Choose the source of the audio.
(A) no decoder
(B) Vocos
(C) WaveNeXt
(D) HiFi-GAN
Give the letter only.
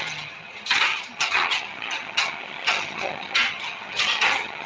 D